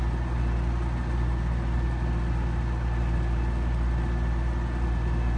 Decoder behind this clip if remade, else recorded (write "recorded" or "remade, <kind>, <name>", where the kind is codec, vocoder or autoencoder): recorded